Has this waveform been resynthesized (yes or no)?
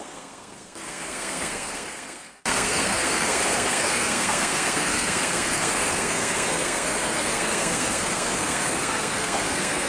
yes